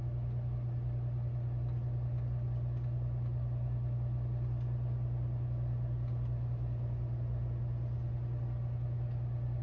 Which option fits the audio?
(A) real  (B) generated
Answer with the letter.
A